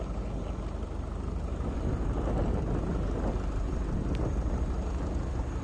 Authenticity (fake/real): real